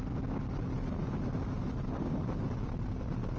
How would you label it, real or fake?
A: real